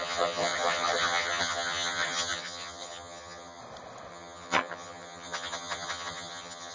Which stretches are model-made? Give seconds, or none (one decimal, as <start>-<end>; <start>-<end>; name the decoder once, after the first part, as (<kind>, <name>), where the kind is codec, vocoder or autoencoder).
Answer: 0.0-3.6 (vocoder, HiFi-GAN); 4.1-6.7